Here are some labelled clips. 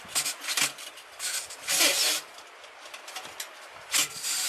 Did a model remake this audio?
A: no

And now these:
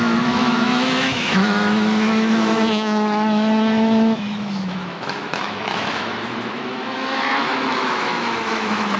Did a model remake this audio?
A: yes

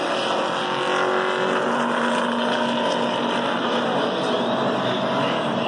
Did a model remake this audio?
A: no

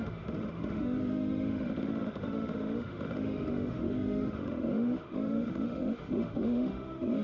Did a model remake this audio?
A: yes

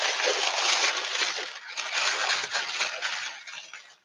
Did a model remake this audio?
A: no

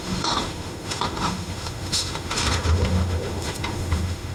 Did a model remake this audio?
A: yes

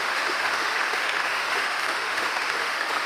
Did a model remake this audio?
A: yes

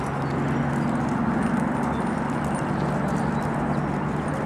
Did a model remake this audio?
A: no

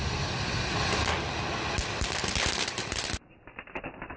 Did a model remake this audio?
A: no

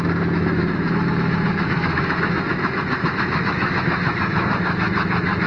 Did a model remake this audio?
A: yes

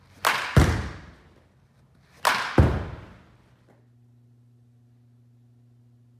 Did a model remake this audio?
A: no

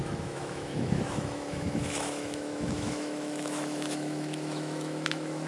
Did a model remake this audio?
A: yes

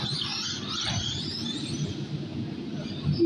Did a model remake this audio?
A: no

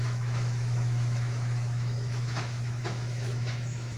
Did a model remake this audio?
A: yes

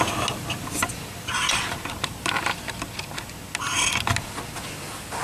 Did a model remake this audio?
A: no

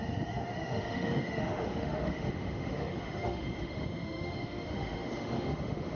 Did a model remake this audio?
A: yes